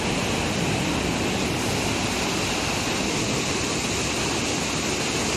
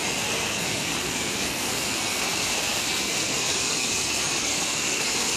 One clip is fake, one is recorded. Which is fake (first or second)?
second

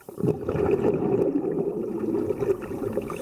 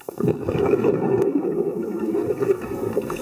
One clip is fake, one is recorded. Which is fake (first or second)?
second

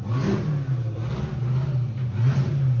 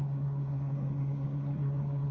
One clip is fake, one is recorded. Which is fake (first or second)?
second